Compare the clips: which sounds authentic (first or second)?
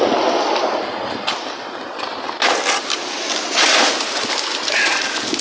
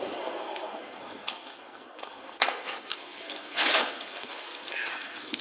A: first